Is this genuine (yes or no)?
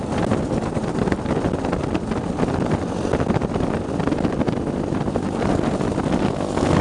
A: yes